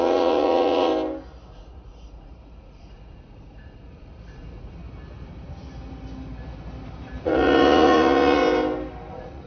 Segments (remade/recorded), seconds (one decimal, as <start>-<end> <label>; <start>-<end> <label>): 0.0-0.9 remade; 0.9-1.5 recorded; 1.5-4.8 remade; 4.8-7.2 recorded; 7.2-8.4 remade; 8.4-9.1 recorded; 9.1-9.5 remade